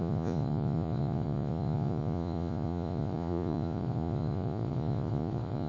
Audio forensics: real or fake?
fake